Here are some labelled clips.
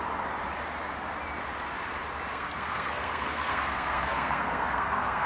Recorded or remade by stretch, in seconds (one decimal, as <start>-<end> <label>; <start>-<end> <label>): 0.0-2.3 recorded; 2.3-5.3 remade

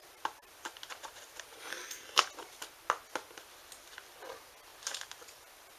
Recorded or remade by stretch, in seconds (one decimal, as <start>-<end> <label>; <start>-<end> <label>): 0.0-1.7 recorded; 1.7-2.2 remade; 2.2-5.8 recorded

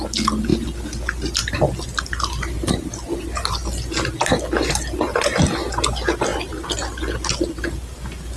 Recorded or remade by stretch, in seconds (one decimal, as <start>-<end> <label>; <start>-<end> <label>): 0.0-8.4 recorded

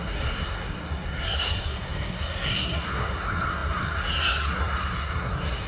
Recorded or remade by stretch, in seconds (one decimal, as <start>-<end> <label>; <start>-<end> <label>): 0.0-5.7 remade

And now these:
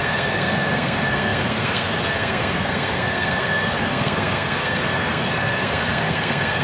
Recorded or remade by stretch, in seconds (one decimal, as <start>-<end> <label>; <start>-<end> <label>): 0.0-6.6 remade

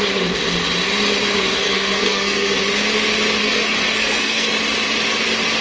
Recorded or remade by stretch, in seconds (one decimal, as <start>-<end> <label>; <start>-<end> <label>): 0.0-1.6 recorded; 1.6-2.6 remade; 2.6-3.4 recorded; 3.4-4.5 remade; 4.5-5.6 recorded

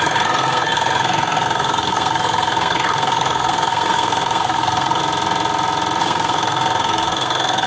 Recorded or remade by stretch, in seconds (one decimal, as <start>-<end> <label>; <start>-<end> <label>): 0.0-5.0 remade; 5.0-6.0 recorded; 6.0-7.7 remade

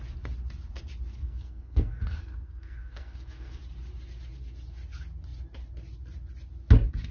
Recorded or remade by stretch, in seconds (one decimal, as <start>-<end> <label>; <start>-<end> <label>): 0.0-1.2 recorded; 1.2-3.6 remade; 3.6-7.1 recorded